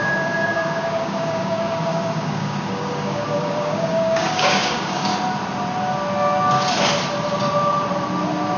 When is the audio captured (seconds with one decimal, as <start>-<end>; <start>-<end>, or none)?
5.1-8.6